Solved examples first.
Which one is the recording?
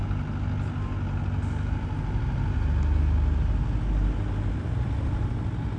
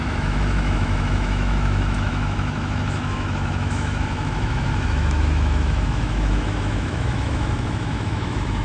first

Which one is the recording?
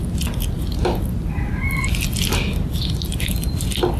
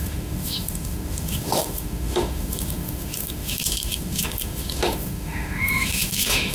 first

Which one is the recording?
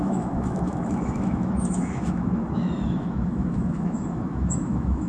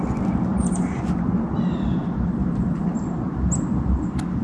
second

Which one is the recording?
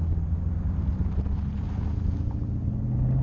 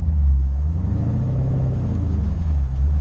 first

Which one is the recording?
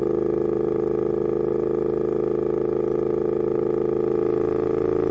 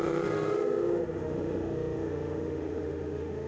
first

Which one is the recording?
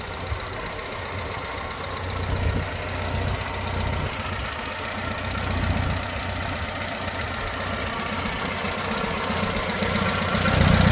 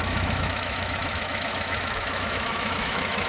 first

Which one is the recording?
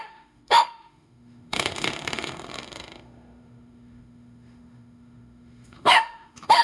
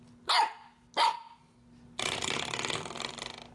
second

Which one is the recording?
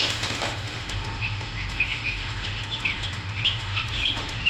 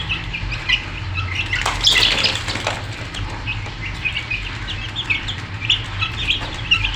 second